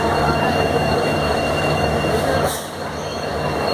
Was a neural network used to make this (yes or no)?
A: yes